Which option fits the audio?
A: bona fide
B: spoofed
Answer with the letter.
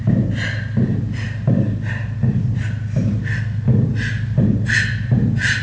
A